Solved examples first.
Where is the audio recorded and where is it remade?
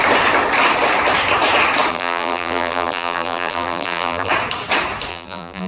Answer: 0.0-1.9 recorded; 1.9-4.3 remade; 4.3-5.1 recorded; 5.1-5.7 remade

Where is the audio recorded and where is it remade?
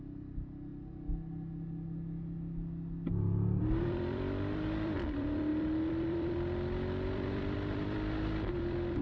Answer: 0.0-0.7 remade; 0.7-3.6 recorded; 3.6-9.0 remade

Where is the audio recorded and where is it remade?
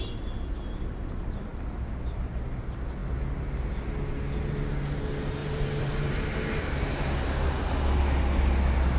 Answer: 0.0-5.4 recorded; 5.4-6.6 remade; 6.6-9.0 recorded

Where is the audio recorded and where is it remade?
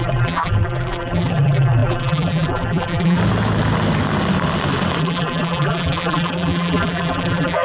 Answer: 0.0-3.2 remade; 3.2-5.0 recorded; 5.0-7.6 remade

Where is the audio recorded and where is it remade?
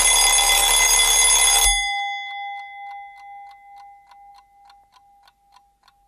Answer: 0.0-6.1 recorded